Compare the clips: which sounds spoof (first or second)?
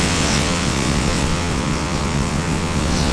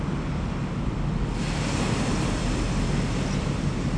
first